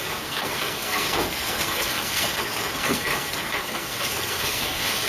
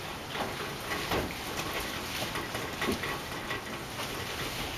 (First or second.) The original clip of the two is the second